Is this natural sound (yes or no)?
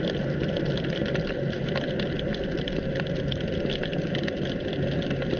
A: yes